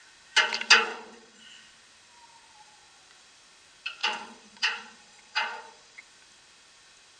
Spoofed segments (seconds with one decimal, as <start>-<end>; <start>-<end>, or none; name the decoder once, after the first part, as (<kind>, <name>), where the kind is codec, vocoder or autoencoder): 0.9-1.4 (vocoder, Vocos); 4.0-6.0